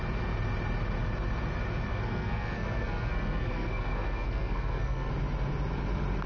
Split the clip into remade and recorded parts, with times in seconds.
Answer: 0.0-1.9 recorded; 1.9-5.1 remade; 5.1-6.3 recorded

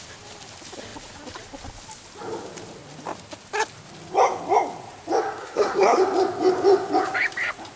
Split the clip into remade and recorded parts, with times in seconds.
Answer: 0.0-5.4 recorded; 5.4-6.0 remade; 6.0-7.8 recorded

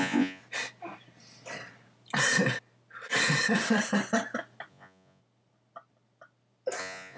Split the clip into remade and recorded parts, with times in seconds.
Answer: 0.0-0.4 remade; 0.4-4.7 recorded; 4.7-5.2 remade; 5.2-6.8 recorded; 6.8-7.2 remade